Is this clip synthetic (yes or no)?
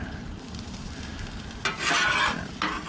no